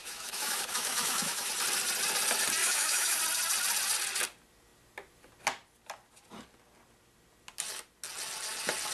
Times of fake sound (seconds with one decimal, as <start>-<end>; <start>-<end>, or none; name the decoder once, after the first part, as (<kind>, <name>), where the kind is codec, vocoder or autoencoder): 0.0-1.5 (autoencoder, DAC-VAE); 2.6-3.2